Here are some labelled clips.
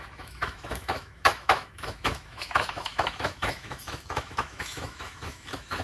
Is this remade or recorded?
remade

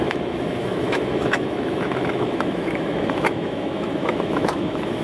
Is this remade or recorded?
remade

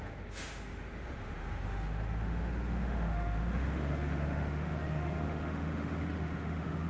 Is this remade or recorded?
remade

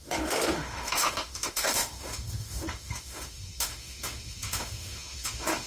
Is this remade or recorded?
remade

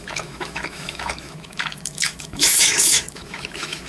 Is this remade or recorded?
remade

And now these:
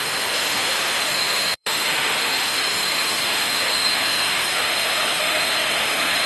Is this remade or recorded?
remade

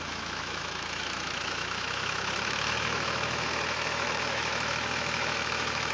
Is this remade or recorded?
remade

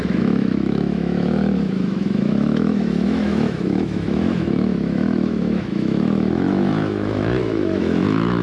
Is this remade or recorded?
remade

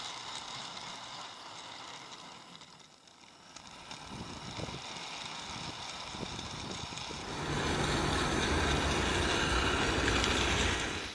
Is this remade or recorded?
recorded